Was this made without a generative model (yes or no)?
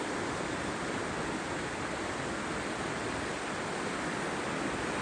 yes